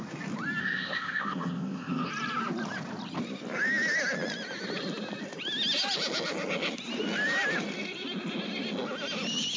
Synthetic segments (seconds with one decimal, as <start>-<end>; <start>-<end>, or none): 0.6-2.1